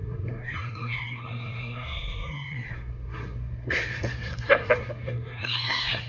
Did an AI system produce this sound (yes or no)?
yes